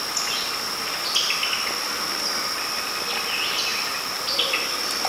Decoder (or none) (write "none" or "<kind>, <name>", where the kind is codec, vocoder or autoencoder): none